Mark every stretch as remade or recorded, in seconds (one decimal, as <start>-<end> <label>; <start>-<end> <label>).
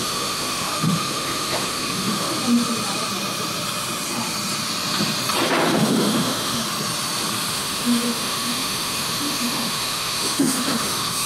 0.0-2.3 remade; 2.3-5.7 recorded; 5.7-6.6 remade; 6.6-7.5 recorded; 7.5-11.3 remade